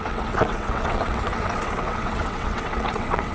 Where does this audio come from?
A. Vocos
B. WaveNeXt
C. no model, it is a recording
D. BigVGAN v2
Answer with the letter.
B